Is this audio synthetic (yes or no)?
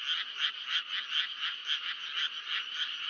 no